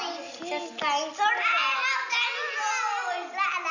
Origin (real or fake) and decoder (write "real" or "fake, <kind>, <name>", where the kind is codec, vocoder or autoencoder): real